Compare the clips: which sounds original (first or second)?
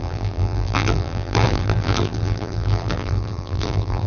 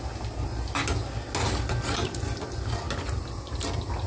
second